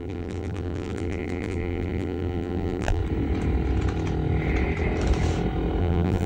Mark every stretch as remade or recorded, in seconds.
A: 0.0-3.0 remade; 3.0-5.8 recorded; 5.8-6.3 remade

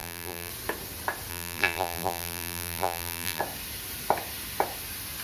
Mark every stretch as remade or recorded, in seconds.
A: 0.0-0.5 remade; 0.5-1.3 recorded; 1.3-3.4 remade; 3.4-5.2 recorded

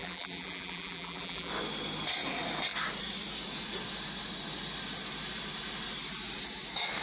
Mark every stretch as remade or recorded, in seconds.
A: 0.0-1.5 remade; 1.5-7.0 recorded

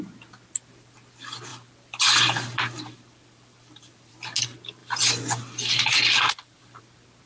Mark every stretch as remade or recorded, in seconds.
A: 0.0-1.5 recorded; 1.5-4.1 remade; 4.1-4.8 recorded; 4.8-6.8 remade; 6.8-7.3 recorded

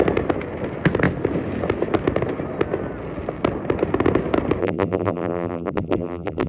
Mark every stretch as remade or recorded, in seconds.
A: 0.0-4.6 recorded; 4.6-6.5 remade

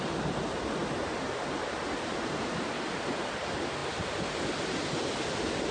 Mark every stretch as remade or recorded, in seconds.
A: 0.0-5.7 recorded

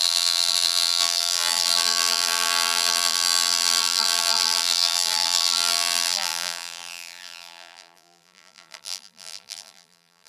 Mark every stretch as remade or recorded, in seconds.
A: 0.0-10.3 remade

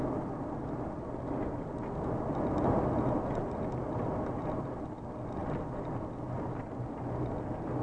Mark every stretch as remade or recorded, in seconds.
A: 0.0-7.8 recorded